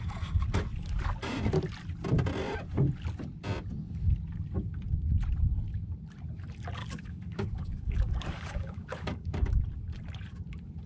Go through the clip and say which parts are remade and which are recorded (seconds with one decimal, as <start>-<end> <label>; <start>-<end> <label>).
0.0-6.8 recorded; 6.8-9.6 remade; 9.6-10.9 recorded